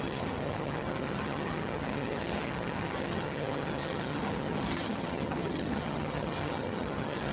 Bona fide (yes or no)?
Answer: no